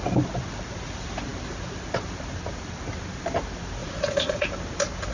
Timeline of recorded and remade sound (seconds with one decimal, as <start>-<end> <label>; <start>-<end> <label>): 0.0-3.8 recorded; 3.8-4.5 remade; 4.5-5.1 recorded